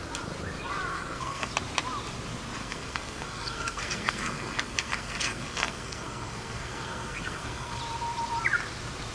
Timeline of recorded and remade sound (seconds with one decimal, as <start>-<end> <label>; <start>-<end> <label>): 0.0-0.9 recorded; 0.9-1.5 remade; 1.5-2.6 recorded; 2.6-7.8 remade; 7.8-9.1 recorded